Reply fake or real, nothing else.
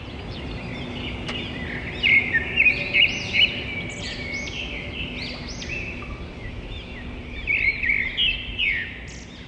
real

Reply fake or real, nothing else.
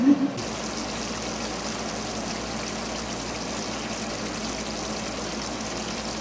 real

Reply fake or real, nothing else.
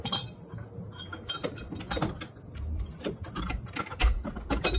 real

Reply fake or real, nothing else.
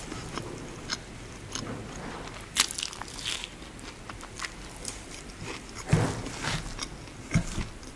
real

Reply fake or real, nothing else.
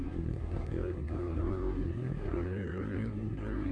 fake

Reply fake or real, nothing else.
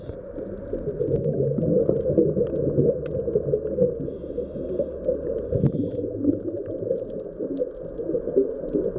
real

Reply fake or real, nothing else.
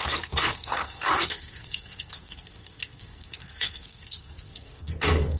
fake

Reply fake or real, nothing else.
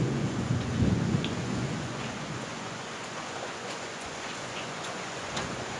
fake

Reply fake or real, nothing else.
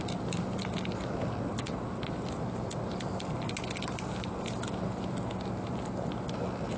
real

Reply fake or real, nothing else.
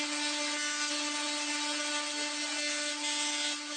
real